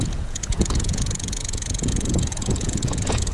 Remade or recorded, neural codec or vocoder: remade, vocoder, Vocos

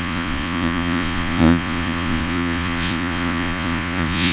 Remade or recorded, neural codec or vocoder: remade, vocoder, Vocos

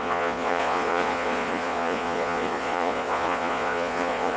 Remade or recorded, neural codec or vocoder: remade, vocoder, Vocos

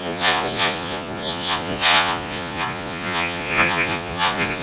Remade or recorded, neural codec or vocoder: remade, vocoder, Vocos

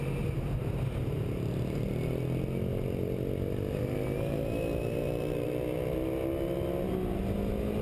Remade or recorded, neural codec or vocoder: recorded